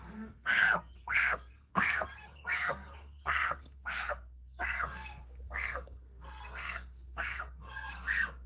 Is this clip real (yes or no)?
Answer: no